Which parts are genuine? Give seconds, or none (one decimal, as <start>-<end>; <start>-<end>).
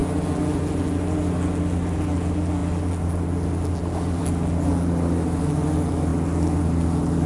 0.0-7.3